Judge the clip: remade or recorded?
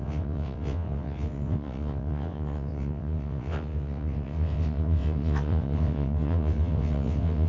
remade